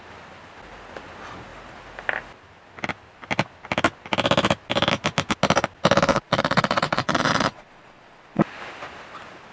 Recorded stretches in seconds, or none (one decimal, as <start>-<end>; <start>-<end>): 0.0-6.1; 8.4-9.5